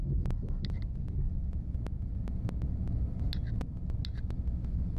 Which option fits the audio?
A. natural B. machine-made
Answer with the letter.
A